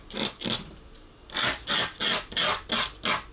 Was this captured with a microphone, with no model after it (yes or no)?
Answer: yes